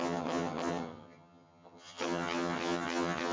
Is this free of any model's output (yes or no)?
no